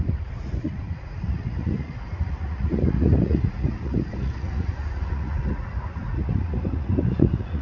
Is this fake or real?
fake